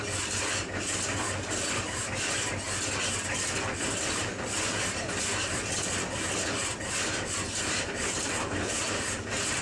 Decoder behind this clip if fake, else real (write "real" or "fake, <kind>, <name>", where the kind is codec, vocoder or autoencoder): real